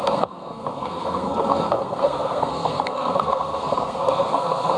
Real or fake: fake